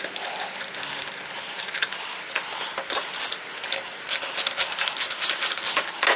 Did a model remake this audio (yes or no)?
no